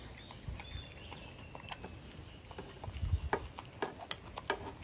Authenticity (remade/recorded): recorded